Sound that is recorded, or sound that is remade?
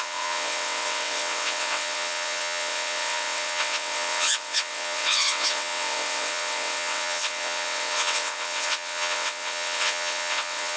remade